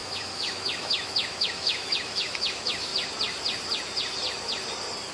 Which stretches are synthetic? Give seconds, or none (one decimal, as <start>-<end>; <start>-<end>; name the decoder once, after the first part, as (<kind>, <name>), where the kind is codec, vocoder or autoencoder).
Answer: 0.0-2.9 (autoencoder, DAC-VAE)